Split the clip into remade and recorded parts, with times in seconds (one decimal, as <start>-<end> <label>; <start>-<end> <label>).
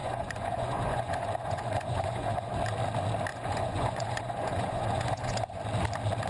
0.0-2.5 remade; 2.5-3.3 recorded; 3.3-5.6 remade; 5.6-6.3 recorded